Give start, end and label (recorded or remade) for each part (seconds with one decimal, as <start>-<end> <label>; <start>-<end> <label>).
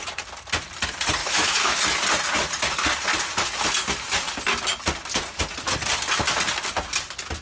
0.0-1.2 recorded; 1.2-1.8 remade; 1.8-7.4 recorded